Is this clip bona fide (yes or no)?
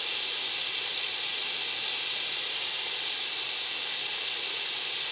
yes